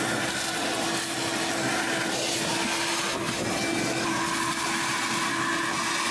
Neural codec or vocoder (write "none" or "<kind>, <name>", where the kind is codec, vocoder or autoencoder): none